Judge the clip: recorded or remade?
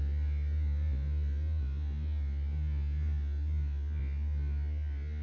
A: recorded